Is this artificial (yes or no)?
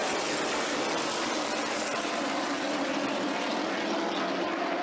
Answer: no